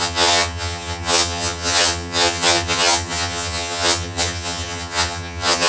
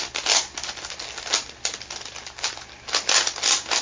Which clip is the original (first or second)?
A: second